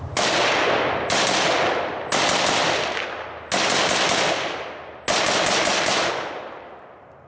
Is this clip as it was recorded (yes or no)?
yes